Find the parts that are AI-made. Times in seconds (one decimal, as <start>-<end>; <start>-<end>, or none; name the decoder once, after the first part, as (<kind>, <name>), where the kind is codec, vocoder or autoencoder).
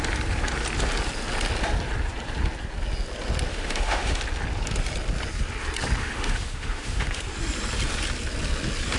3.5-4.2 (autoencoder, DAC-VAE); 6.0-7.2